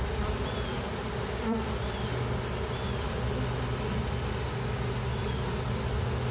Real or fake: real